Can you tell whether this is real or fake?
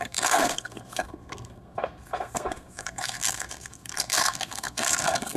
fake